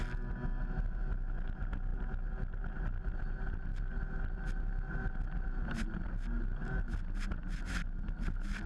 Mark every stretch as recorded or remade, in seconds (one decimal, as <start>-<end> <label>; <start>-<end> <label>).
0.0-8.7 recorded